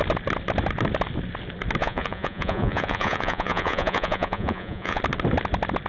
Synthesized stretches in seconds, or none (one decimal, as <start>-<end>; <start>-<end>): 1.8-5.0